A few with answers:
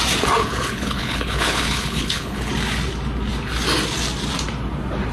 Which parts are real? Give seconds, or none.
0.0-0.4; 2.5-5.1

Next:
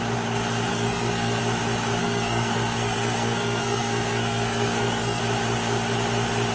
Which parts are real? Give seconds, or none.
0.0-0.7; 1.4-2.0; 5.2-6.5

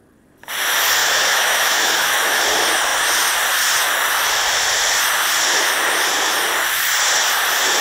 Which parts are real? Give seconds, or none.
0.0-1.0; 2.4-7.8

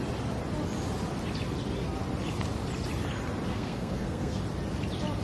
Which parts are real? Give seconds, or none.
0.0-3.5; 4.4-5.2

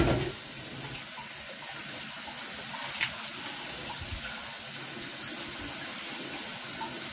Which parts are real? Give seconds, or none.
0.0-7.1

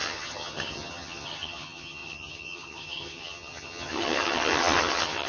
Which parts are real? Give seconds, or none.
none

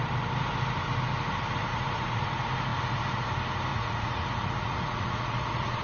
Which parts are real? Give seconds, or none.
0.0-1.7; 2.3-3.7

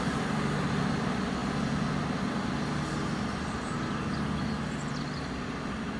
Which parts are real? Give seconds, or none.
0.0-6.0